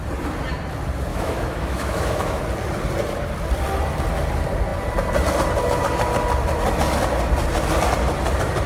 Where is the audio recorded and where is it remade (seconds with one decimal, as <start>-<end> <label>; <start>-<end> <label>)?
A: 0.0-1.1 recorded; 1.1-2.4 remade; 2.4-8.7 recorded